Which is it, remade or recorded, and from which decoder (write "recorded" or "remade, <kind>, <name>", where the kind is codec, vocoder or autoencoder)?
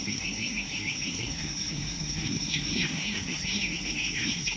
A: remade, codec, SNAC